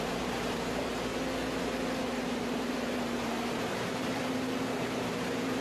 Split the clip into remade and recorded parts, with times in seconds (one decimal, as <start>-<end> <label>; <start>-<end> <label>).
0.0-1.1 remade; 1.1-2.0 recorded; 2.0-5.6 remade